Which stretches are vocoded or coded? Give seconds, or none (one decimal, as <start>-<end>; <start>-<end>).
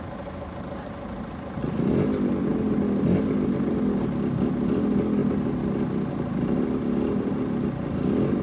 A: none